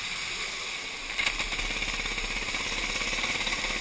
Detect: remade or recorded recorded